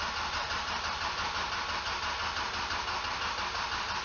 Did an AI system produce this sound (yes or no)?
no